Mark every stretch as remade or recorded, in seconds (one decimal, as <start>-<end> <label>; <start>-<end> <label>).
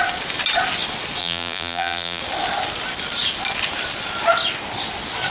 0.0-1.2 recorded; 1.2-2.2 remade; 2.2-5.3 recorded